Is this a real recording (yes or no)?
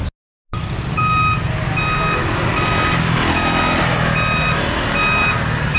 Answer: yes